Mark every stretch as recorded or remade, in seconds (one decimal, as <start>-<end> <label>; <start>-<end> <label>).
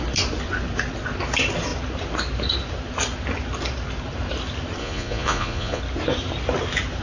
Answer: 0.0-4.8 recorded; 4.8-5.8 remade; 5.8-7.0 recorded